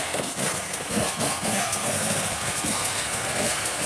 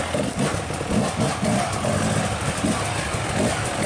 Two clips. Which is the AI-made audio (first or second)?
first